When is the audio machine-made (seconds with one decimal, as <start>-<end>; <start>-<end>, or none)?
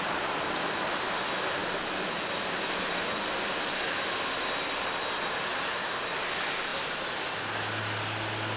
none